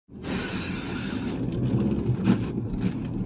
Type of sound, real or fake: real